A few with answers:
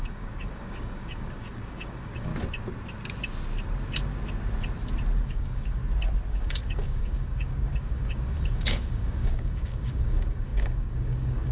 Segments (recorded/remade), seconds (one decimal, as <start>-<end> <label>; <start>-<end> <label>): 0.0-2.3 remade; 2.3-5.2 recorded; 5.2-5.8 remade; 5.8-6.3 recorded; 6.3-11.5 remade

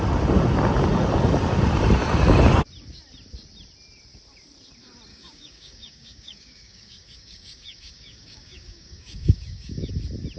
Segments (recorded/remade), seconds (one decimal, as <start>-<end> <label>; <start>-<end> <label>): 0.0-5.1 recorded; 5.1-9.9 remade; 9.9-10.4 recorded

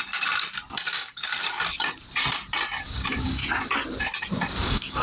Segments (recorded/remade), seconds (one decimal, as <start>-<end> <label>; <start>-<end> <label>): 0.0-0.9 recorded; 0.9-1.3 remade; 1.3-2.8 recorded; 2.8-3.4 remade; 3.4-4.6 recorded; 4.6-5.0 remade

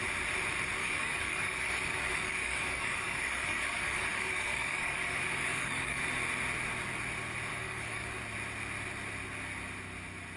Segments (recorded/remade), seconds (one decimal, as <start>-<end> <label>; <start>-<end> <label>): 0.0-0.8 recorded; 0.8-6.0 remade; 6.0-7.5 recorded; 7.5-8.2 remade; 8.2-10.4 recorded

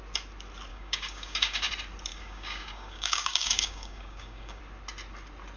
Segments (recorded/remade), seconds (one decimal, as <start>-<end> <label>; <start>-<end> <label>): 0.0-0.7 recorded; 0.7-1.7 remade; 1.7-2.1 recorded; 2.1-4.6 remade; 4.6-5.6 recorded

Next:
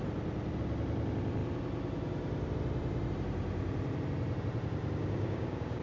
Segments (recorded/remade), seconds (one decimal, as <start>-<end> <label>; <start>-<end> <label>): 0.0-5.0 recorded; 5.0-5.8 remade